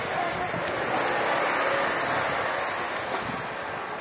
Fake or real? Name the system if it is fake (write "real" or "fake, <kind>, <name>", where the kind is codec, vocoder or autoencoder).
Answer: real